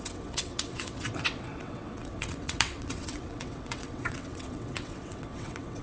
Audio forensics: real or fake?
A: fake